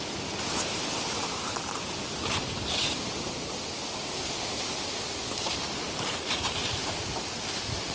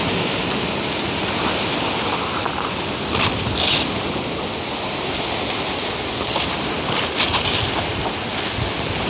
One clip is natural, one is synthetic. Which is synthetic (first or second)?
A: first